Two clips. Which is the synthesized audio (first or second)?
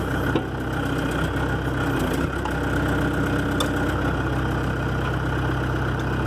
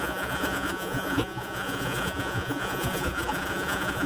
second